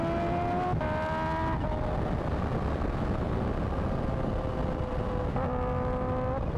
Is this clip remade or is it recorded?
recorded